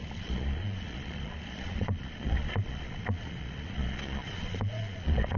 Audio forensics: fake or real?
fake